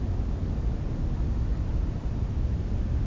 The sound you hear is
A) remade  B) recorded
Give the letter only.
B